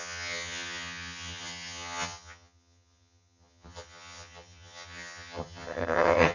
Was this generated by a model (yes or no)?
yes